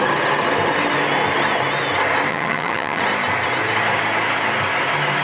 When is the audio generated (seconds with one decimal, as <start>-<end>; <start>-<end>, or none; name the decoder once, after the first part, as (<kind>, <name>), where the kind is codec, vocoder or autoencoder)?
2.3-3.0 (vocoder, HiFi-GAN)